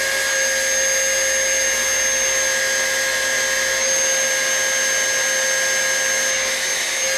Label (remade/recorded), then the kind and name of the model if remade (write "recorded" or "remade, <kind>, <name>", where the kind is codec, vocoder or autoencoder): recorded